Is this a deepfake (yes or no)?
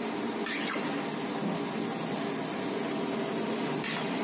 no